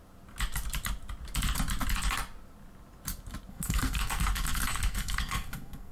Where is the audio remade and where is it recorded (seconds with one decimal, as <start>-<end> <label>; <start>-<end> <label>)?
0.0-3.5 recorded; 3.5-5.9 remade